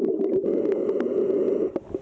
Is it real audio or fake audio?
real